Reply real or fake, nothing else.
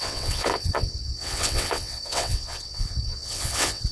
fake